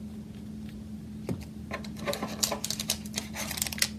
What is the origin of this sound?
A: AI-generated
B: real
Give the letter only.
B